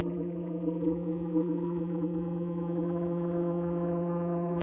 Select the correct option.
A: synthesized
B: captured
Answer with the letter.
A